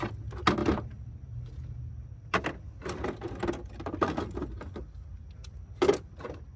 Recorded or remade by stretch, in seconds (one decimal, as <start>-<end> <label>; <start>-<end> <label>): 0.0-0.6 recorded; 0.6-1.9 remade; 1.9-6.6 recorded